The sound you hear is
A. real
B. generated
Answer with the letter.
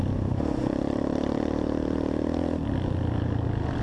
A